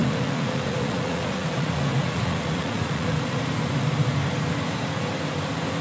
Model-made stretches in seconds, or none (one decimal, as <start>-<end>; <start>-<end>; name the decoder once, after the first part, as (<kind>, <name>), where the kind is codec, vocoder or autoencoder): 0.0-3.4 (vocoder, Vocos)